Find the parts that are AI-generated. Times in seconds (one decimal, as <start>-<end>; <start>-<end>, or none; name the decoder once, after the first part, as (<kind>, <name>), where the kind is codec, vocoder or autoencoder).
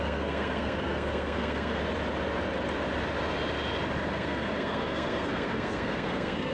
0.0-1.8 (codec, SNAC); 4.1-6.5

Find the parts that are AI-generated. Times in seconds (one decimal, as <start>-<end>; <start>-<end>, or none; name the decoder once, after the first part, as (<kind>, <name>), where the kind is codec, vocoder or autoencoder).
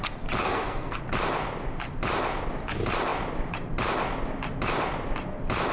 0.4-1.0 (codec, SNAC)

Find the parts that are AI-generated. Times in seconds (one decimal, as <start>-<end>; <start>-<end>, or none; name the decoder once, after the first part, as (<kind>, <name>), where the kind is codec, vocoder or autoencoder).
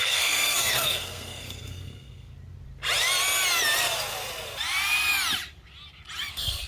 0.0-2.3 (codec, SNAC); 6.3-6.7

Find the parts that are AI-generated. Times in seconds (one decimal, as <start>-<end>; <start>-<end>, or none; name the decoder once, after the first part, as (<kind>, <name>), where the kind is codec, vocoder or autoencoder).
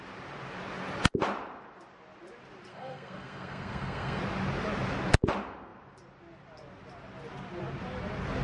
2.7-4.2 (codec, SNAC)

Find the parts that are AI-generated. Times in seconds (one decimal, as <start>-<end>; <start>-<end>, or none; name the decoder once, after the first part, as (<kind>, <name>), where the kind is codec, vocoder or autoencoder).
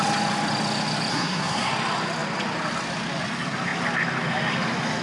1.1-1.7 (codec, SNAC)